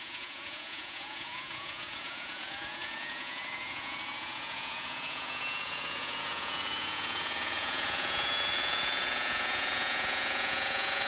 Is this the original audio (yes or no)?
no